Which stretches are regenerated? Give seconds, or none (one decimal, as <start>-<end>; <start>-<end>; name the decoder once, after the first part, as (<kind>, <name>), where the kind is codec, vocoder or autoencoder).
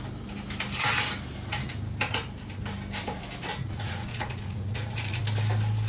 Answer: 3.5-5.2 (vocoder, Vocos)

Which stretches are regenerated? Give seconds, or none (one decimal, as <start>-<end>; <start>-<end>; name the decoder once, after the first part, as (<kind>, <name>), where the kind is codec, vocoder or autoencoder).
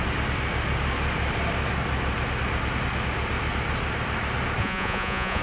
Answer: 4.6-5.4 (vocoder, Vocos)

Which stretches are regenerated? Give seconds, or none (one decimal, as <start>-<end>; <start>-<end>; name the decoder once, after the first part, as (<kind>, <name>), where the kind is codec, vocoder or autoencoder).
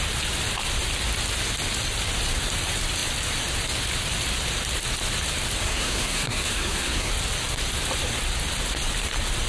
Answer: 5.6-7.1 (codec, SNAC)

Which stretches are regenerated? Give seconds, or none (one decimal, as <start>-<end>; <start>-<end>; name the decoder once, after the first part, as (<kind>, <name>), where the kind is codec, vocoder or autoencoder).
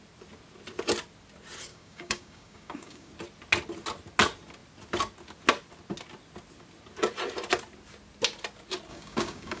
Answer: 1.7-3.1 (codec, DAC); 8.9-9.6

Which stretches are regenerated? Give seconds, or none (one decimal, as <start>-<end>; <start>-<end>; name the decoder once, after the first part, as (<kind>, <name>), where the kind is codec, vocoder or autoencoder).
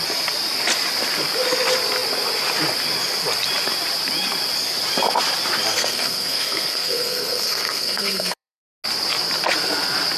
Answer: 5.7-8.6 (codec, SNAC)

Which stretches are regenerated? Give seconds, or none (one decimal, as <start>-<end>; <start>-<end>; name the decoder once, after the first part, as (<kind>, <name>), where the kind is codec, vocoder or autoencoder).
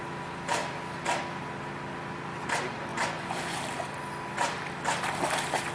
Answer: 2.9-3.6 (vocoder, Vocos)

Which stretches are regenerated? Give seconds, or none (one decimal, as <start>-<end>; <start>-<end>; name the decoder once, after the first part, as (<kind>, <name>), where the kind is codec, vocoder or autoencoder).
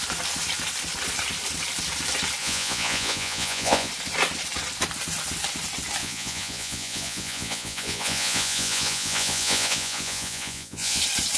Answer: 2.4-3.9 (vocoder, Vocos); 6.0-11.0